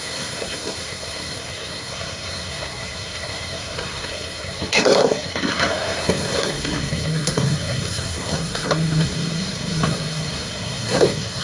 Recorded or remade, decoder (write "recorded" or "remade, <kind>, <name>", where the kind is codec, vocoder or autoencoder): remade, codec, SNAC